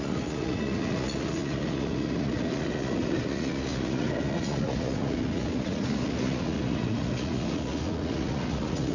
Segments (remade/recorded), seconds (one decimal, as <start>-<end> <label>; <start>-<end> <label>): 0.0-8.9 remade